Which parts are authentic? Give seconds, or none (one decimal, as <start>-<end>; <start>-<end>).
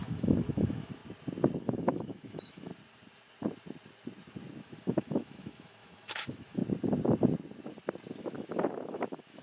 1.0-1.6; 2.7-4.6; 6.6-8.2